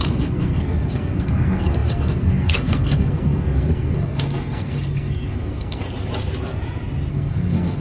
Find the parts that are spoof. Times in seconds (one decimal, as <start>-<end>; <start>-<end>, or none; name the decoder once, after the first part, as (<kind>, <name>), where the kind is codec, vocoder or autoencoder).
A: 0.0-5.8 (codec, SNAC); 7.1-7.8